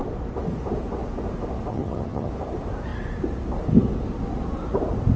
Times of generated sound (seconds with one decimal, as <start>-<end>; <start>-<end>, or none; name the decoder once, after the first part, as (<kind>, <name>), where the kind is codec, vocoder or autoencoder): 1.7-2.3 (vocoder, HiFi-GAN)